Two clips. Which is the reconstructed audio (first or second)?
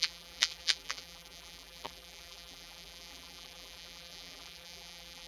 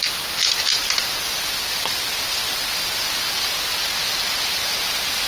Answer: first